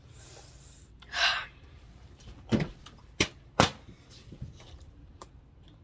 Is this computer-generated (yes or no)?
yes